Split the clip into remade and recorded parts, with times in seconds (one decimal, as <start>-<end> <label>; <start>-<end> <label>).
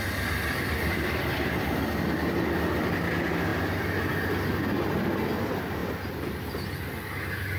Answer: 0.0-7.6 recorded